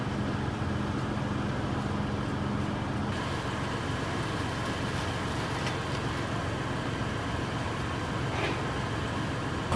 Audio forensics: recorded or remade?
recorded